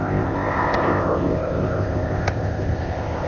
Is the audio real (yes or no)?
no